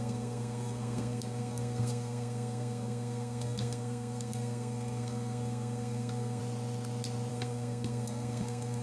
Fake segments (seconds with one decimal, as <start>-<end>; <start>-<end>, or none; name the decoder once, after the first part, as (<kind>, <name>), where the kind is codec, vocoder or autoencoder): 0.0-6.4 (codec, SNAC); 7.3-8.8